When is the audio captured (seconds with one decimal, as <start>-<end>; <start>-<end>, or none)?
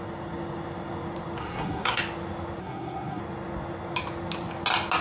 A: 0.0-1.4; 2.0-2.6; 3.2-5.0